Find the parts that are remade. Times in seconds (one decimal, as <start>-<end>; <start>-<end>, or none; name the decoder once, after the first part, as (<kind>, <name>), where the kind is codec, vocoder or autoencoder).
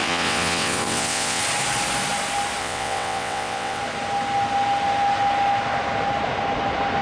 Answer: 0.0-1.4 (vocoder, WaveNeXt); 2.6-3.8